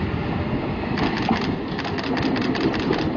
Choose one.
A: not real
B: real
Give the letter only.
B